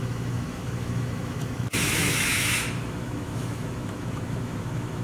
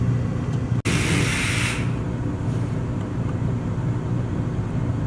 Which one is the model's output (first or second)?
first